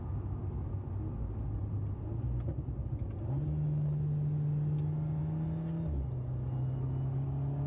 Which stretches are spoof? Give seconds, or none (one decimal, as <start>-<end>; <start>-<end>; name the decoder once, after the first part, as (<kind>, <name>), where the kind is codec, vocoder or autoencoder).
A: none